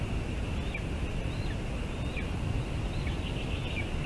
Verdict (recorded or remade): recorded